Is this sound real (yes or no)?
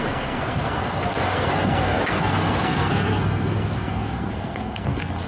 no